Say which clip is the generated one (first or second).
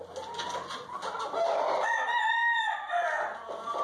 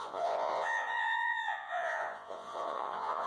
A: second